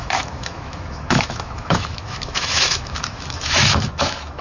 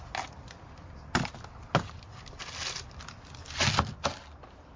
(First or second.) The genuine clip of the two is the second